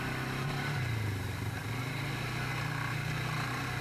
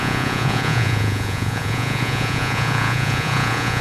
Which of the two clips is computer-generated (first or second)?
second